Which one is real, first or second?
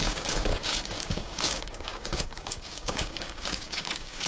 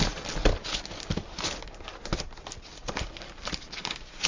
second